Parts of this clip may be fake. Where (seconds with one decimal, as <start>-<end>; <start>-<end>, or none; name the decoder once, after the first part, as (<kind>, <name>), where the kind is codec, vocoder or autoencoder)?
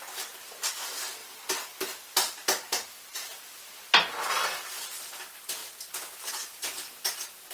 none